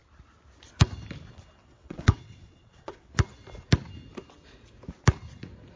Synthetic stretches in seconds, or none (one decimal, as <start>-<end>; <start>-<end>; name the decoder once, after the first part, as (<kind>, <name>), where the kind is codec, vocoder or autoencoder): 1.6-3.1 (vocoder, WaveNeXt)